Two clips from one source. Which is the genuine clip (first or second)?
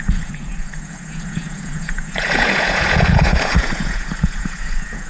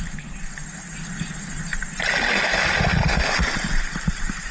second